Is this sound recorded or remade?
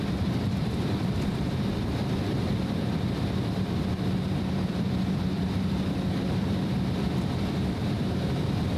remade